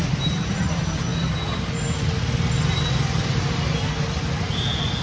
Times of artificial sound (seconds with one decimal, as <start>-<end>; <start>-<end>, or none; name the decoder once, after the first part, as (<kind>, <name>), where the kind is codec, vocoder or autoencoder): none